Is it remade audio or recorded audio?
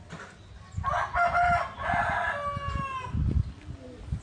recorded